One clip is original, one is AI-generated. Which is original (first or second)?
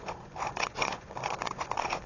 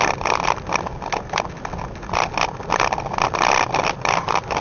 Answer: second